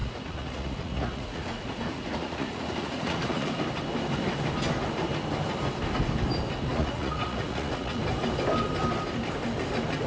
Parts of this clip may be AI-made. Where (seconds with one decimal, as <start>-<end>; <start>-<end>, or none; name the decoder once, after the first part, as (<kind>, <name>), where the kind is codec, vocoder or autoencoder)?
0.0-3.5 (vocoder, Vocos); 6.7-8.0